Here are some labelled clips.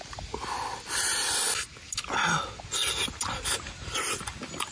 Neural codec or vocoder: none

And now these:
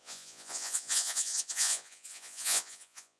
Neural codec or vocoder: vocoder, Vocos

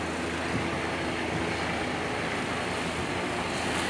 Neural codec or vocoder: none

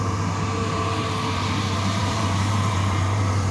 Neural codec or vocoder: vocoder, BigVGAN v2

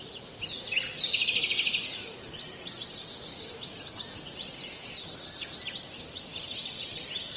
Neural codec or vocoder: none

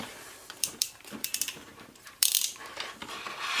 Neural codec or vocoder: vocoder, BigVGAN v2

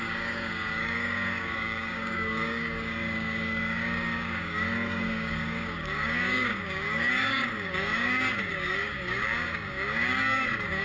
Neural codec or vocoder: codec, DAC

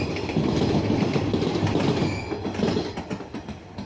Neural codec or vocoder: none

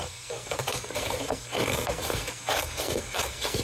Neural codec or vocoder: codec, SNAC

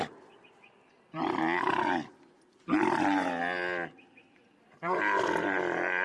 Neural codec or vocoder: none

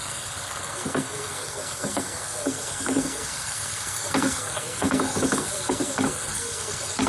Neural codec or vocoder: codec, SNAC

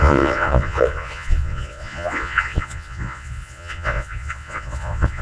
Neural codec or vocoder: vocoder, Vocos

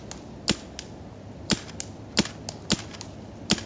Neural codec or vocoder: none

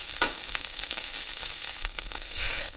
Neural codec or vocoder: codec, SNAC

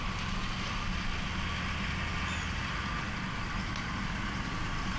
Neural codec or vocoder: none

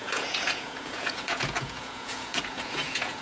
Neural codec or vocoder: vocoder, Vocos